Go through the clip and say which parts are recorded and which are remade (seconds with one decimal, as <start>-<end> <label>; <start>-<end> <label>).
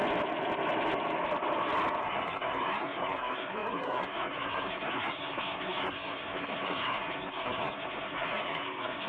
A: 0.0-2.0 recorded; 2.0-9.1 remade